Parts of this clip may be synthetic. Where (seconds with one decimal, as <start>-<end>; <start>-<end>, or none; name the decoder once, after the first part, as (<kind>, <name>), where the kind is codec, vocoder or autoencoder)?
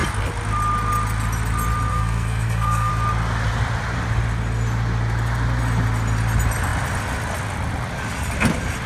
1.9-2.9 (codec, SNAC)